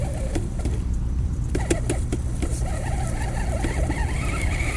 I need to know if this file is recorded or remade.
recorded